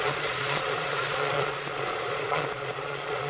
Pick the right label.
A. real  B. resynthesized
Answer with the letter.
B